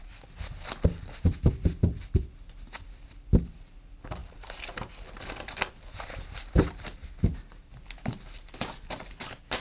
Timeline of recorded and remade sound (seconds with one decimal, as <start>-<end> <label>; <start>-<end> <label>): 0.0-9.6 recorded